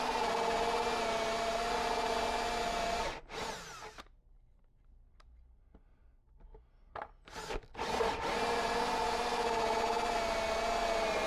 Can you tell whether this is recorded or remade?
recorded